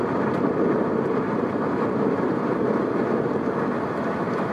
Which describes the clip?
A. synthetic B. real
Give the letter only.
B